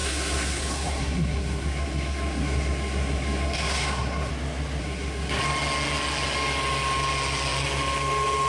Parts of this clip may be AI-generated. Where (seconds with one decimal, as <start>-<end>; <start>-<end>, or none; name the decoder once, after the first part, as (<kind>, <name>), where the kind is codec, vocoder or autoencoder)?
0.0-4.3 (codec, SNAC); 4.8-5.4